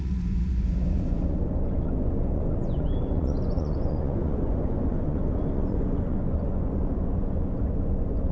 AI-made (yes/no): yes